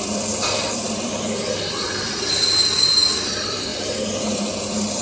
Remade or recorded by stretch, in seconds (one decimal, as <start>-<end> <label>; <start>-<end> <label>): 0.0-3.7 remade; 3.7-4.6 recorded; 4.6-5.0 remade